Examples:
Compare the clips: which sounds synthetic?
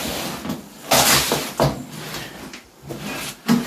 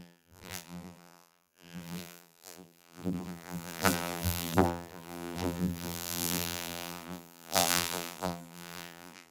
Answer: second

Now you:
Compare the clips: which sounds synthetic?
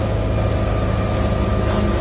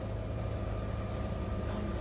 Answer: second